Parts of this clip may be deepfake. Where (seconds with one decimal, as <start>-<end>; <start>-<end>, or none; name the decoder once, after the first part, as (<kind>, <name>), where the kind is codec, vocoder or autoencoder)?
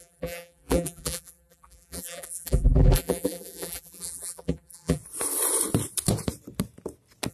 0.0-5.0 (vocoder, BigVGAN v2)